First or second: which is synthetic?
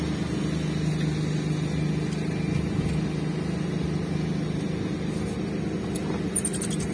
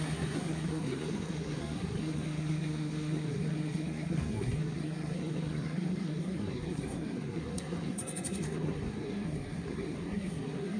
second